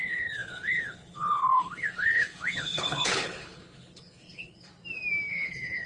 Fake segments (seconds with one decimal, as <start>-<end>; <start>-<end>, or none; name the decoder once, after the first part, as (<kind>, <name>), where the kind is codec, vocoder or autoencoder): 0.0-4.7 (codec, HILCodec); 5.3-5.9